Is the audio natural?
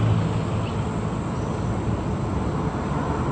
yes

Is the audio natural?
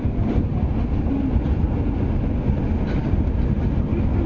yes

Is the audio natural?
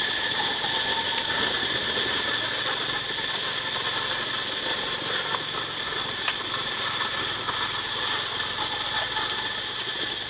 yes